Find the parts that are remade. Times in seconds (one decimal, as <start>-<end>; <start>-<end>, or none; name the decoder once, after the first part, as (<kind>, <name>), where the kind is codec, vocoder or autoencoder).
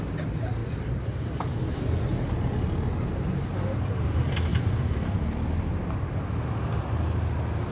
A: none